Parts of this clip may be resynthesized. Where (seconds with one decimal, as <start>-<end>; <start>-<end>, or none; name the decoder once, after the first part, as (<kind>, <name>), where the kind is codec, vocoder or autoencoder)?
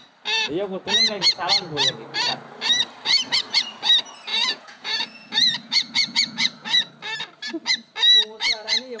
4.3-6.9 (vocoder, Vocos)